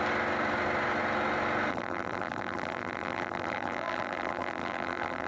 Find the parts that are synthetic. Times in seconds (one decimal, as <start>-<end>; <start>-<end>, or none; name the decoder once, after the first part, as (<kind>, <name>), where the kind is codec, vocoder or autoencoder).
1.7-5.3 (vocoder, BigVGAN v2)